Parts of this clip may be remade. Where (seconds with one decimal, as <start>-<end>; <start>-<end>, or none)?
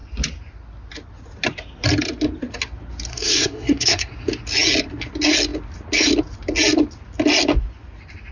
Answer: 3.1-4.1